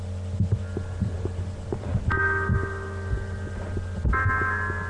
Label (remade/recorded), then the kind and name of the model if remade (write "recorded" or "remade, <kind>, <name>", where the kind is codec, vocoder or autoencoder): recorded